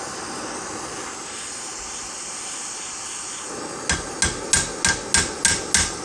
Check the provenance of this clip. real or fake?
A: real